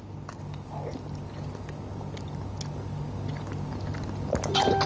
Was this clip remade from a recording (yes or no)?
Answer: no